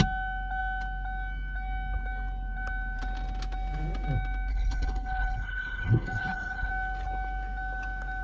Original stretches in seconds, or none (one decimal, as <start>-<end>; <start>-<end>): 0.0-4.5; 6.7-8.2